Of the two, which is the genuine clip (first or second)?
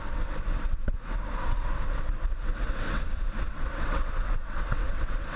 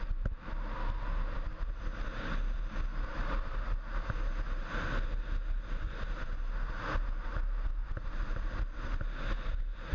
second